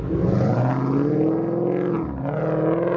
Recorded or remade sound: recorded